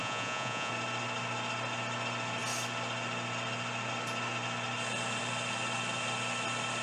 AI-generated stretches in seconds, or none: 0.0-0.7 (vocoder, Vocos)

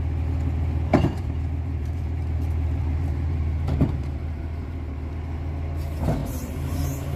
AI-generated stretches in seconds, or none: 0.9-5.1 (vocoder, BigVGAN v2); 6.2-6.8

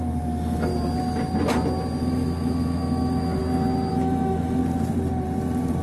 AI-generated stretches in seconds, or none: 0.0-0.7 (autoencoder, DAC-VAE); 2.0-3.4; 3.9-4.6

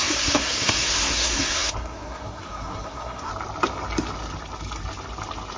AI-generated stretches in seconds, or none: 0.0-3.3 (codec, SNAC)